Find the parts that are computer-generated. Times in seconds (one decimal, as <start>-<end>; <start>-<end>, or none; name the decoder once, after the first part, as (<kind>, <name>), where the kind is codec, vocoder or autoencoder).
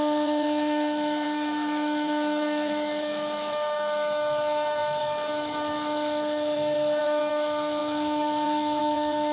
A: 0.0-9.3 (autoencoder, DAC-VAE)